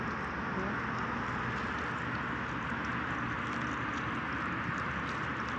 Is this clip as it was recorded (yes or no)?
yes